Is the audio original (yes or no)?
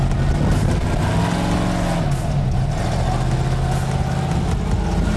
yes